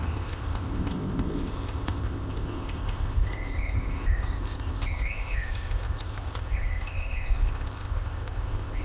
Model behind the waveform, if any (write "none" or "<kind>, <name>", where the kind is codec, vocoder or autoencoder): codec, ZipCodec